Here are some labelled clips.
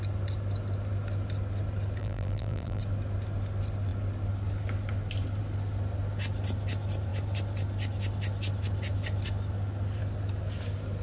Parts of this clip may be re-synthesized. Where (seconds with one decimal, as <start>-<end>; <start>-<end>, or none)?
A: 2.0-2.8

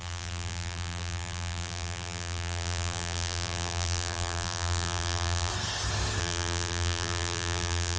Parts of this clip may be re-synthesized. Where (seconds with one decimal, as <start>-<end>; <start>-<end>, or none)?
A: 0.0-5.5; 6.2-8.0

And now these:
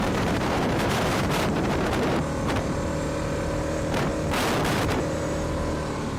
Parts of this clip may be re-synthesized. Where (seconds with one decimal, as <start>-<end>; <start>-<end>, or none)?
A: 0.0-4.1; 4.7-6.2